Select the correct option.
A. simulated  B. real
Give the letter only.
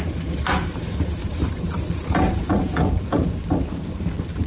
A